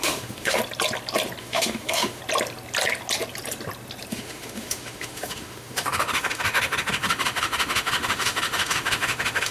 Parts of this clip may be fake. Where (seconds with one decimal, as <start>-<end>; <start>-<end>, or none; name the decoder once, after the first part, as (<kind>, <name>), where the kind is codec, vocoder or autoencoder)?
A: 0.0-0.6 (autoencoder, DAC-VAE); 1.4-2.2; 4.1-9.5

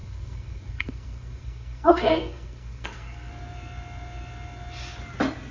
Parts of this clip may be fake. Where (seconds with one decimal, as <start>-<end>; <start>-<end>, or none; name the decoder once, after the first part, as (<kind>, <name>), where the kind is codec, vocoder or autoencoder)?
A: 0.0-3.3 (codec, SNAC)

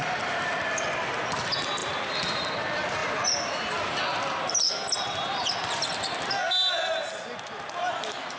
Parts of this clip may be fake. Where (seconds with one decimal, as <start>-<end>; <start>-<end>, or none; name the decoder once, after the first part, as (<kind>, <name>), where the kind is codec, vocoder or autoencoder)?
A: 0.0-0.6 (vocoder, BigVGAN v2); 1.8-2.4; 3.0-6.3

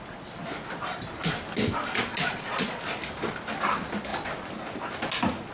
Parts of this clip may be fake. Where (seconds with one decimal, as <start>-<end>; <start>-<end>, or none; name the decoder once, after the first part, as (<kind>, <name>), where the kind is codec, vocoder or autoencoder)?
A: 2.1-2.8 (vocoder, Vocos)

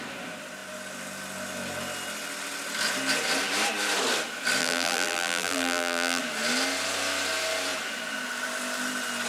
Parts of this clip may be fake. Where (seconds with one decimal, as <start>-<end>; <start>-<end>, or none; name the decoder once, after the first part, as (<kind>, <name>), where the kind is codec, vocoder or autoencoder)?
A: 4.6-6.2 (vocoder, BigVGAN v2)